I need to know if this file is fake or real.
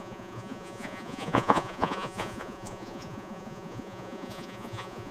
fake